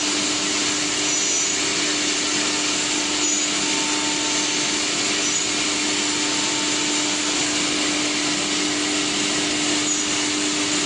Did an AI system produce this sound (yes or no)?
no